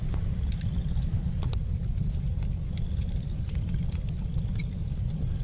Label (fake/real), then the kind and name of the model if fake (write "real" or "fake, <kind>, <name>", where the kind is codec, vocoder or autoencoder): real